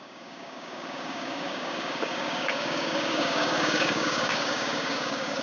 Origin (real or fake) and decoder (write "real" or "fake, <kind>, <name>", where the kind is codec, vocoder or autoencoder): fake, codec, DAC